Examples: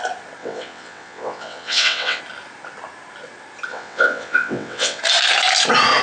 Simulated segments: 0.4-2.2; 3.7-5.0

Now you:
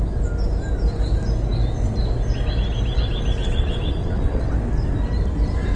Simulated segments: 3.4-4.5

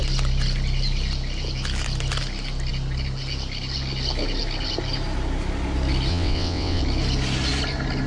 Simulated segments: 6.1-6.8

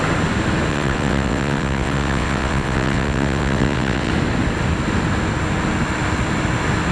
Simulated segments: 0.7-4.1

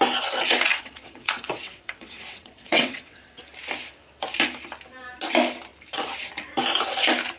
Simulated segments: 0.7-3.4

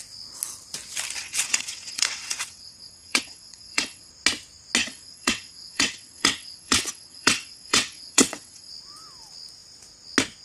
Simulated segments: 1.2-4.1; 4.8-8.7

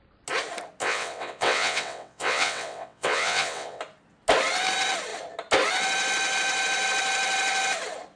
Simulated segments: 0.8-3.8